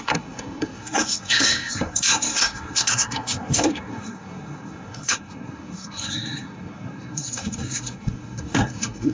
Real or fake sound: fake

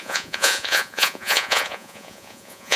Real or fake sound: fake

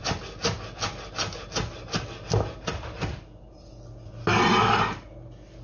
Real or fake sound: real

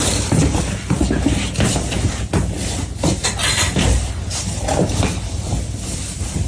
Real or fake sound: fake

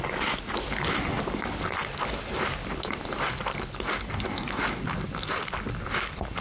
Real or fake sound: real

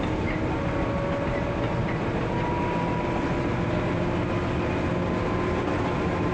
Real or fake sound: real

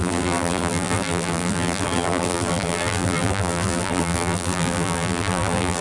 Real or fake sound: fake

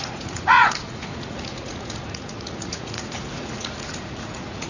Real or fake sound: fake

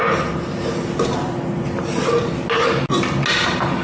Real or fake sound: real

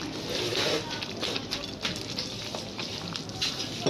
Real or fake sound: real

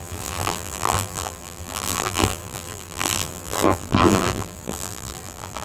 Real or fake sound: fake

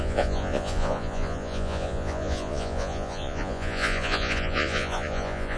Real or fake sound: fake